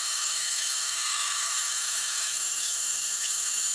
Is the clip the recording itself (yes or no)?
no